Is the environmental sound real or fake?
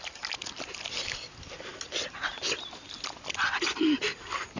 real